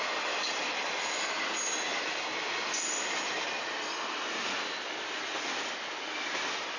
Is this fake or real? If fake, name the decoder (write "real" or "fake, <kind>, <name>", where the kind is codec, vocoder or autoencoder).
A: real